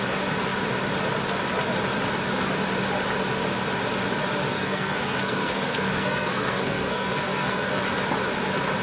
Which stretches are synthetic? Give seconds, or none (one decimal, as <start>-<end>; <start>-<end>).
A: 4.5-7.8